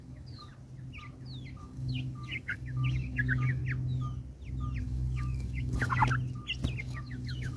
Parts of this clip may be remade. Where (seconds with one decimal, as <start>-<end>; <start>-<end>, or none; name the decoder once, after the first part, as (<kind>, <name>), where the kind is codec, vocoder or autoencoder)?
0.0-0.5 (codec, DAC); 1.6-3.6; 4.8-6.0; 6.8-7.6